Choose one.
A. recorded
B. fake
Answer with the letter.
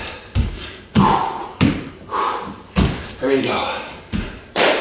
B